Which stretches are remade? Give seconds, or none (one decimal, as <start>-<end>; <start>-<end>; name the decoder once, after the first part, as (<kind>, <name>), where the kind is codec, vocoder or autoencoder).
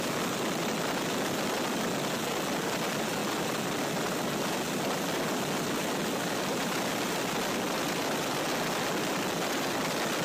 none